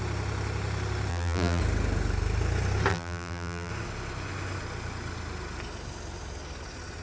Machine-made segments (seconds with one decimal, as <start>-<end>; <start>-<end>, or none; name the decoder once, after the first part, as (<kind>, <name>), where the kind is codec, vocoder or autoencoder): 1.1-1.6 (vocoder, BigVGAN v2); 2.9-3.7